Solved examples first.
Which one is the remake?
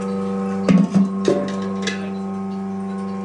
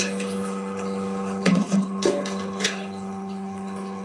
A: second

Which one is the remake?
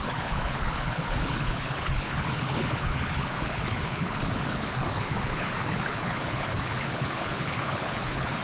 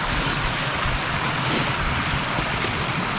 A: first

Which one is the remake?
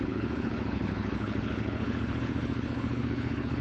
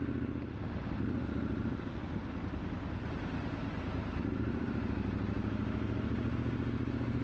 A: first